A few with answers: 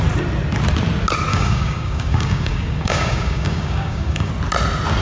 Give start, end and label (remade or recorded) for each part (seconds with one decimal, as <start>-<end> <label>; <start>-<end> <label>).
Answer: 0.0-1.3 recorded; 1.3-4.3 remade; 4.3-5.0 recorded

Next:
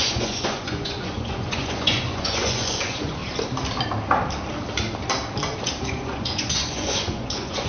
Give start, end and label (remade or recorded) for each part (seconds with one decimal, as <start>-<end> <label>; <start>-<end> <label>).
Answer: 0.0-3.2 remade; 3.2-5.9 recorded; 5.9-7.7 remade

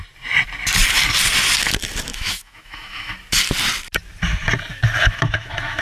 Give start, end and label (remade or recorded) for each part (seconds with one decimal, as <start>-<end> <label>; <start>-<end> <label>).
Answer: 0.0-2.1 recorded; 2.1-3.1 remade; 3.1-4.7 recorded; 4.7-5.8 remade

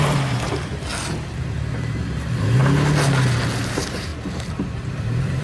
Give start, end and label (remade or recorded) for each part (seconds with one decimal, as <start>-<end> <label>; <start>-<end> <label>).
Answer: 0.0-0.9 remade; 0.9-1.5 recorded; 1.5-2.6 remade; 2.6-3.6 recorded; 3.6-5.4 remade